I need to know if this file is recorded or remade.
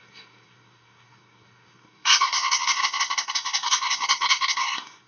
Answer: remade